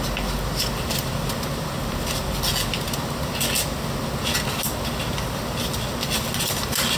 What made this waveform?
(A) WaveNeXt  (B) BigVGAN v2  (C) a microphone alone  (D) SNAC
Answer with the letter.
C